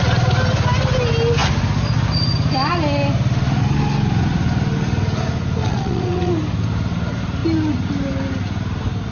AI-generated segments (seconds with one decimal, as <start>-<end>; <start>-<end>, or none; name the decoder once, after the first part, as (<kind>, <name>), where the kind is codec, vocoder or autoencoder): 5.6-6.3 (vocoder, WaveNeXt)